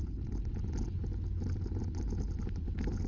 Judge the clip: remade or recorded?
recorded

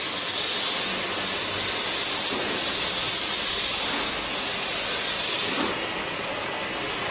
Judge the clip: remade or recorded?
recorded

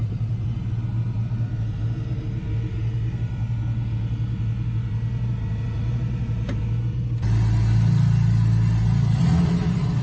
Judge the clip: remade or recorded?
recorded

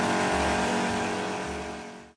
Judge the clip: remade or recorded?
recorded